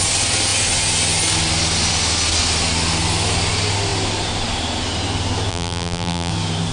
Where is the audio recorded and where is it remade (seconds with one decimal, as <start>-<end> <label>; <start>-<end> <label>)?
0.0-5.5 recorded; 5.5-6.3 remade; 6.3-6.7 recorded